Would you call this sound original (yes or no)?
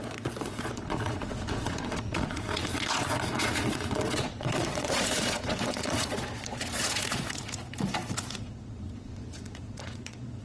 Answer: no